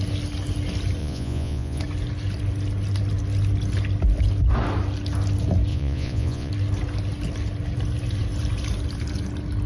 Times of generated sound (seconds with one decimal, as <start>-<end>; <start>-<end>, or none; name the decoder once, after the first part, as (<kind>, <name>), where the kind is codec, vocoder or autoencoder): 1.0-1.8 (vocoder, Vocos); 5.7-6.5